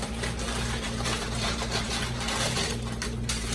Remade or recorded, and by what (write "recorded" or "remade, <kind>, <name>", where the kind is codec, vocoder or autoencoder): remade, vocoder, BigVGAN v2